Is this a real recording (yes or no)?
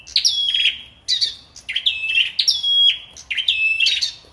yes